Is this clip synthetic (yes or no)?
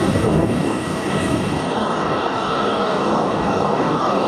yes